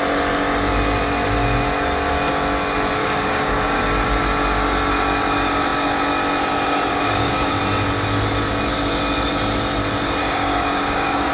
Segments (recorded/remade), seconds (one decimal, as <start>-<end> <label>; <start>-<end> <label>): 0.0-3.0 recorded; 3.0-3.8 remade; 3.8-6.9 recorded; 6.9-7.5 remade; 7.5-10.2 recorded; 10.2-11.3 remade